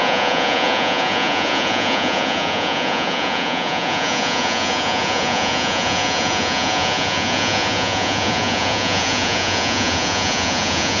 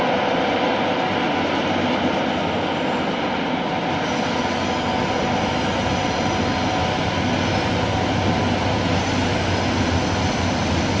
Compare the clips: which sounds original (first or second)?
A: second